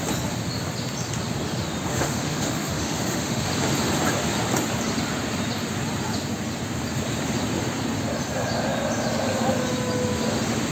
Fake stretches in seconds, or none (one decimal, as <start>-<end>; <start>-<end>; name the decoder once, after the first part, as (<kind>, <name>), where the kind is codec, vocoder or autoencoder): 1.9-3.5 (autoencoder, DAC-VAE)